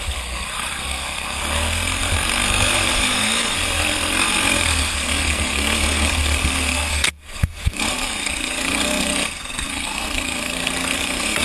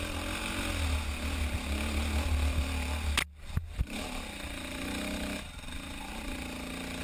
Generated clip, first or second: first